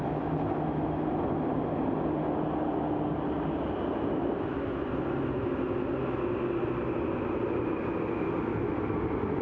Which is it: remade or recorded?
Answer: recorded